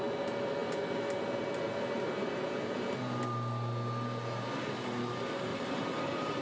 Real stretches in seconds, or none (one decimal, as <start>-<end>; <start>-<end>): 0.0-5.5; 6.0-6.4